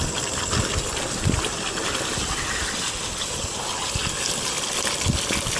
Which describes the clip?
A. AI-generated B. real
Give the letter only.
B